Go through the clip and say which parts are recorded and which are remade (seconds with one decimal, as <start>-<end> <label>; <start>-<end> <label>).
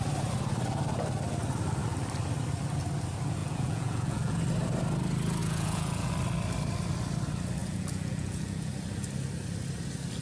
0.0-3.4 recorded; 3.4-4.4 remade; 4.4-5.4 recorded; 5.4-6.1 remade; 6.1-7.6 recorded; 7.6-8.7 remade; 8.7-10.2 recorded